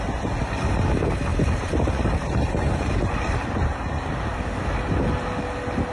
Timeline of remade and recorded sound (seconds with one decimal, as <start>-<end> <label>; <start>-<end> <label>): 0.0-1.3 recorded; 1.3-3.1 remade; 3.1-5.9 recorded